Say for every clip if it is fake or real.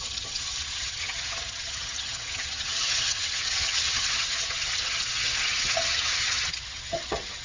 fake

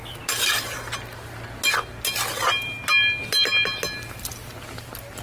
real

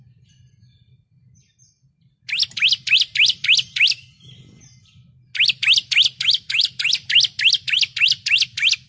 real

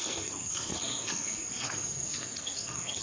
fake